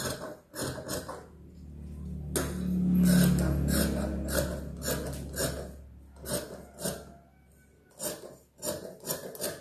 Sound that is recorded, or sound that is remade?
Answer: recorded